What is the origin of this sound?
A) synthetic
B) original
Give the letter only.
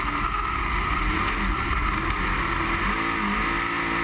B